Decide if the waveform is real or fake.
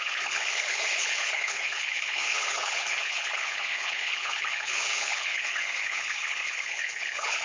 fake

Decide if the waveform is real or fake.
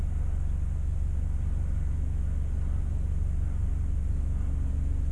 real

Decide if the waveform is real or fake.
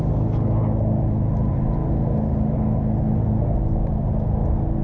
real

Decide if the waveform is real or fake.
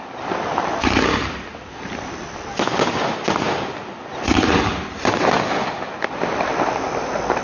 real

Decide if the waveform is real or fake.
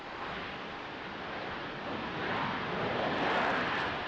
real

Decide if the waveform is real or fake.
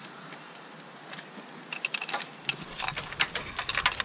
real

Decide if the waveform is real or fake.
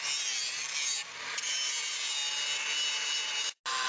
real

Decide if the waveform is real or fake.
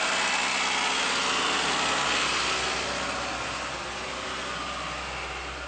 real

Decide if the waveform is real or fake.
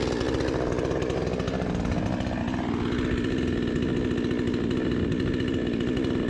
real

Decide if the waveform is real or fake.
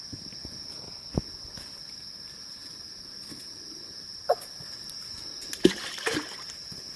real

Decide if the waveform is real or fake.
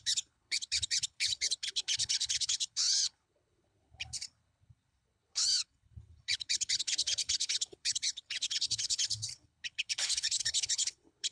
fake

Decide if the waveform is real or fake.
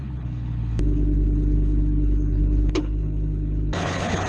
fake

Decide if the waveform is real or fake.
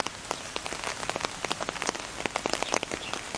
real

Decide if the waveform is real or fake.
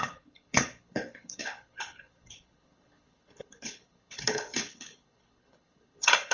fake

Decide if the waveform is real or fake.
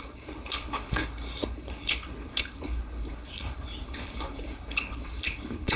fake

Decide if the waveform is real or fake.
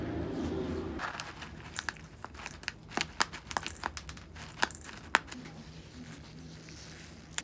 real